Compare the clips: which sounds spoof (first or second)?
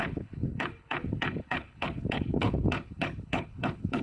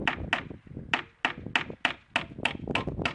first